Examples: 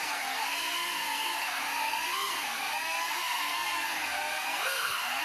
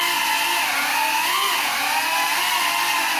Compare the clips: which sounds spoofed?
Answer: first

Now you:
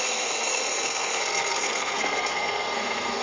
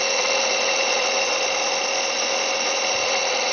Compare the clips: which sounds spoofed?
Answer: first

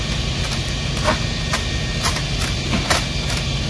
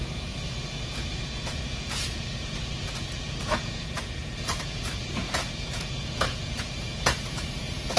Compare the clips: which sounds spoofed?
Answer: second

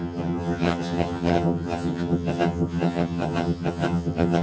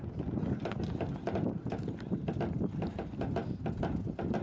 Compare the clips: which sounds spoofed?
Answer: first